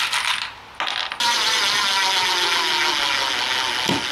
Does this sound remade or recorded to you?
recorded